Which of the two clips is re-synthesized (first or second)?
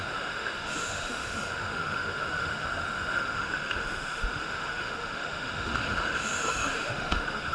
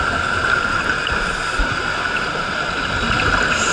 first